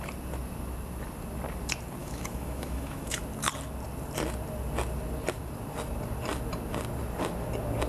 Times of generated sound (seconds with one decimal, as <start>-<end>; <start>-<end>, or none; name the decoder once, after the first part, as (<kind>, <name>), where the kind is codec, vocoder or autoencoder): 2.0-3.2 (autoencoder, DAC-VAE)